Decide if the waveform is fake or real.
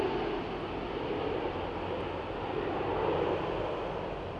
real